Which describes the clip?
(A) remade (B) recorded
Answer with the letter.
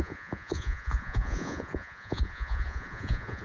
A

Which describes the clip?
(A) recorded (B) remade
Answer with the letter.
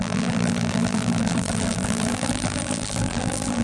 B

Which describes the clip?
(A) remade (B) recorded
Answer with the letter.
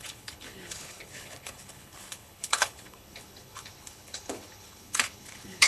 A